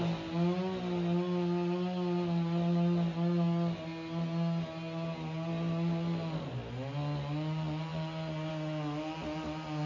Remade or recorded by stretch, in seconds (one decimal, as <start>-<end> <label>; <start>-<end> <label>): 0.0-9.9 recorded